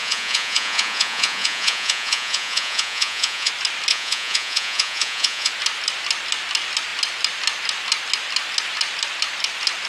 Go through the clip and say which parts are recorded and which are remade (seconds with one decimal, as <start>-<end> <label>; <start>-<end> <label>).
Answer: 0.0-3.5 remade; 3.5-3.9 recorded; 3.9-5.5 remade; 5.5-9.9 recorded